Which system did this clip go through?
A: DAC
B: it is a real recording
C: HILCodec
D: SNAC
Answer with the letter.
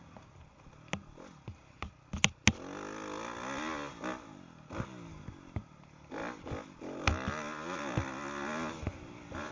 B